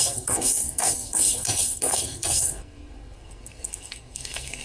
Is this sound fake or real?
fake